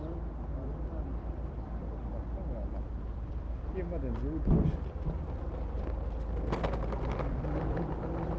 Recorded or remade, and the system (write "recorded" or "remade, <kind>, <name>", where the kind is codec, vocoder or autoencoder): recorded